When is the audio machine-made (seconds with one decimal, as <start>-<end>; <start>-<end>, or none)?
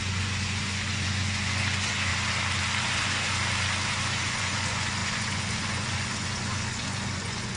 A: 0.0-2.1; 2.9-3.4; 3.9-7.6